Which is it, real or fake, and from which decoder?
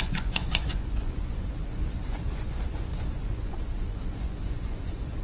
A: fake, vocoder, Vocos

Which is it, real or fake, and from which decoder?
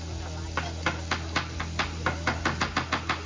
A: real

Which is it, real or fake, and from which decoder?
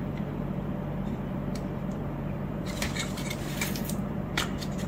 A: fake, vocoder, BigVGAN v2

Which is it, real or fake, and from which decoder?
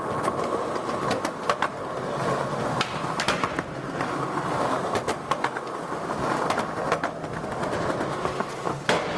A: real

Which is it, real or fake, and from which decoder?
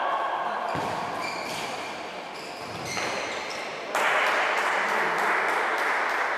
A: real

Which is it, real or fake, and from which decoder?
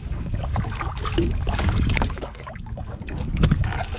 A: fake, codec, DAC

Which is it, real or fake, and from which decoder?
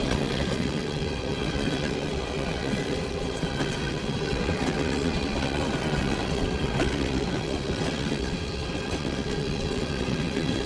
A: fake, vocoder, WaveNeXt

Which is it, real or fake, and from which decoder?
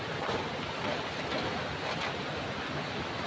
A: real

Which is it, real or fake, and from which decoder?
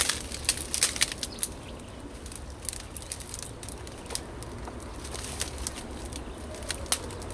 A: real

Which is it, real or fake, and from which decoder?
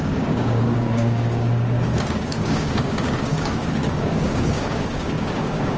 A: fake, codec, DAC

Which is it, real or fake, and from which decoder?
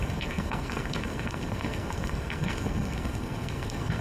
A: fake, codec, SNAC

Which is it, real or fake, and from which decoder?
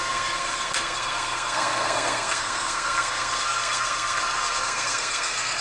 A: fake, codec, SNAC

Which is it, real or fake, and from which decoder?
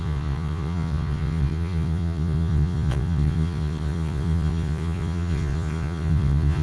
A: fake, vocoder, Vocos